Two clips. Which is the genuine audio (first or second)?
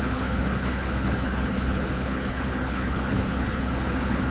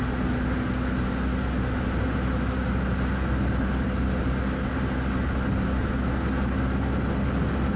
second